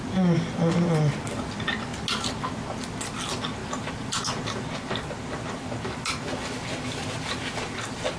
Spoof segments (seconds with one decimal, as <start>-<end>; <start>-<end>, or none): none